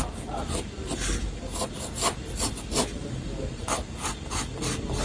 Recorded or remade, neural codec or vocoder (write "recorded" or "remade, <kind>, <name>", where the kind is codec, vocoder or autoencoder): recorded